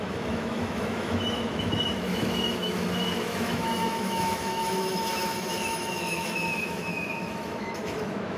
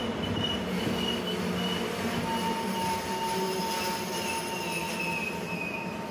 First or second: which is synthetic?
first